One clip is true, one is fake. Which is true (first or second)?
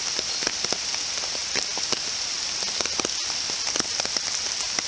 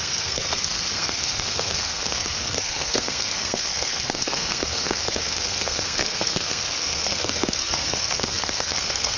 first